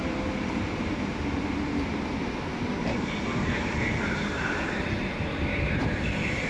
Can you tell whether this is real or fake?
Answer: fake